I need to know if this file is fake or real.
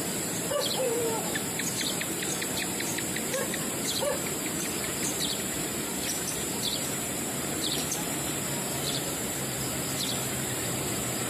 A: fake